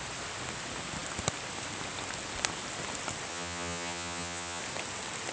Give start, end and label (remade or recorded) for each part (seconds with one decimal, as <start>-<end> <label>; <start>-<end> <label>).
0.0-3.3 recorded; 3.3-4.6 remade; 4.6-5.3 recorded